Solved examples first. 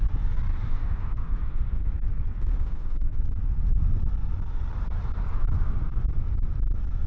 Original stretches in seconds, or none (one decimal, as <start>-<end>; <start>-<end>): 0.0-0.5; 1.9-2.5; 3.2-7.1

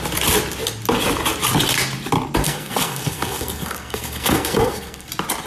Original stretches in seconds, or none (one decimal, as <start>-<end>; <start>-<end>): 0.0-2.4; 5.1-5.5

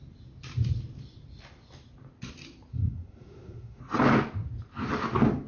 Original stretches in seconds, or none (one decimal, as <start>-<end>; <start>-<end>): 0.0-2.7; 3.8-5.5

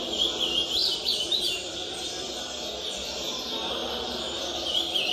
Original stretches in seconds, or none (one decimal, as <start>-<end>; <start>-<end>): 0.0-0.8; 2.1-5.1

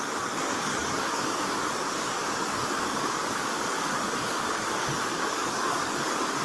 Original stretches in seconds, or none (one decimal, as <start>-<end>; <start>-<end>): none

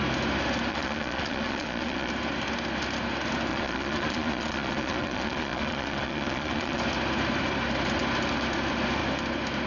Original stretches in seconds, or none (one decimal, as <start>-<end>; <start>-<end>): 0.0-0.7; 2.1-3.5; 6.8-9.7